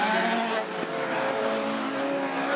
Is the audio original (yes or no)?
yes